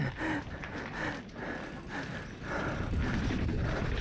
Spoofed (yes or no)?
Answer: no